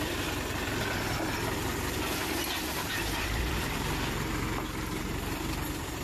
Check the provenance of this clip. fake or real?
fake